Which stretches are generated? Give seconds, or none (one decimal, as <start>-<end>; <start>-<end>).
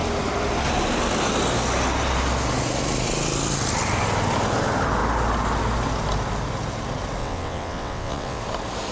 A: 7.2-8.4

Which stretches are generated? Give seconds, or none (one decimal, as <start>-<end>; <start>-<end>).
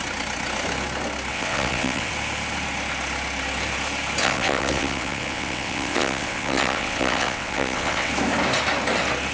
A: 1.3-2.1; 4.2-8.1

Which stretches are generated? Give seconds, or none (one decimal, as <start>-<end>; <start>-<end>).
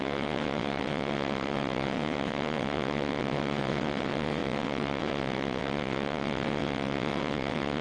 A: 0.0-7.8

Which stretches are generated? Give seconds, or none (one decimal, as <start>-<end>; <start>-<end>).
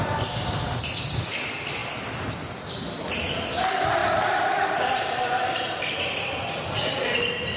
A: none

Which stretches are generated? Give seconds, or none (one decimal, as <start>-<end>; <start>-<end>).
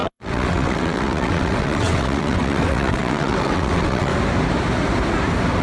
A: 0.0-4.1